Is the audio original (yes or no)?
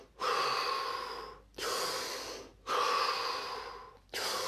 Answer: yes